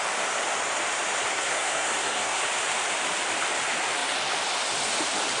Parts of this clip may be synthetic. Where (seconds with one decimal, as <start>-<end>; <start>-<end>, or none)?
1.3-2.4